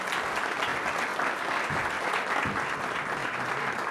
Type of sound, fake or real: real